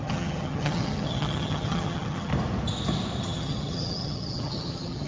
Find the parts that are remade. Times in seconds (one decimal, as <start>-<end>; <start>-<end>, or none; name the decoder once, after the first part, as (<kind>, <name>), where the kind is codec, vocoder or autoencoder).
0.0-2.3 (vocoder, HiFi-GAN); 3.2-5.1